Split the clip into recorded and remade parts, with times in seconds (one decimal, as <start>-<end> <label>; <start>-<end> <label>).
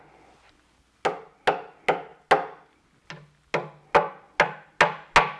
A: 0.0-5.4 recorded